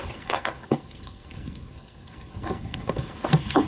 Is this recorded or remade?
remade